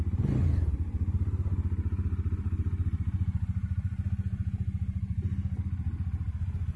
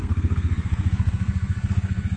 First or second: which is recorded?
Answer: first